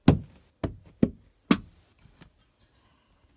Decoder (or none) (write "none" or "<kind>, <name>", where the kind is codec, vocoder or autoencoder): none